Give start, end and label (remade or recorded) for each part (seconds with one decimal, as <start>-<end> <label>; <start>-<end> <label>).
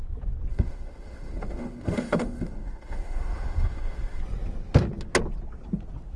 0.0-0.5 recorded; 0.5-4.2 remade; 4.2-6.2 recorded